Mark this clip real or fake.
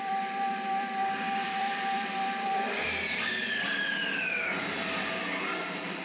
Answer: fake